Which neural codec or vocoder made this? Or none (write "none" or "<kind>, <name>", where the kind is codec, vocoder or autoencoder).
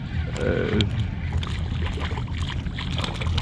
none